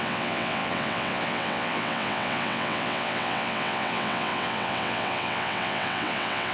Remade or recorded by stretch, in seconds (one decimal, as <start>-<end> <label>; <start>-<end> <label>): 0.0-6.5 remade

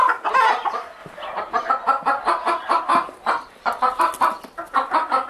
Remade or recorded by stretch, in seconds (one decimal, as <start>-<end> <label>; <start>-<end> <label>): 0.0-1.0 recorded; 1.0-1.7 remade; 1.7-2.9 recorded; 2.9-4.0 remade; 4.0-5.3 recorded

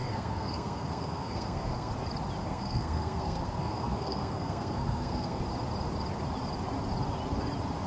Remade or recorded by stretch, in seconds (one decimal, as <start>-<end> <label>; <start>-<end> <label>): 0.0-1.9 remade; 1.9-2.4 recorded; 2.4-5.4 remade; 5.4-7.9 recorded

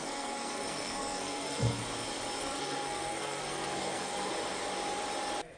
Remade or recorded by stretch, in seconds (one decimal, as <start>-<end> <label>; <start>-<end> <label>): 0.0-1.8 remade; 1.8-2.4 recorded; 2.4-4.3 remade; 4.3-5.6 recorded

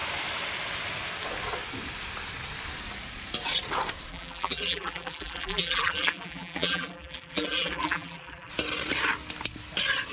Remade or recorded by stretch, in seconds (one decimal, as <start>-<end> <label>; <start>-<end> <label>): 0.0-4.1 recorded; 4.1-8.5 remade; 8.5-10.1 recorded

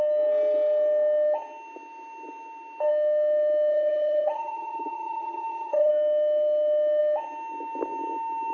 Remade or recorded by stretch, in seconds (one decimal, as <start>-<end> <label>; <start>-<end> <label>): 0.0-3.7 recorded; 3.7-5.9 remade; 5.9-8.5 recorded

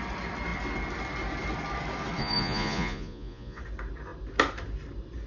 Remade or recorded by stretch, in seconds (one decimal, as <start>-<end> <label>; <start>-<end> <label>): 0.0-2.2 recorded; 2.2-3.6 remade; 3.6-5.3 recorded

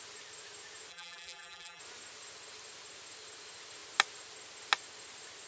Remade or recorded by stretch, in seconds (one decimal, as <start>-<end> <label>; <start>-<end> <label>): 0.0-0.9 recorded; 0.9-1.8 remade; 1.8-5.5 recorded